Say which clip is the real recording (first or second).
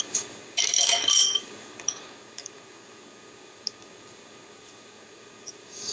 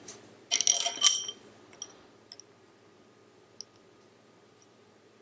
second